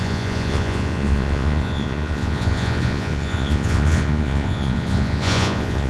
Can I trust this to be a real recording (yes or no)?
no